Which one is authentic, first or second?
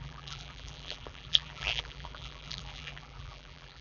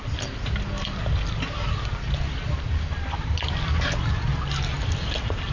second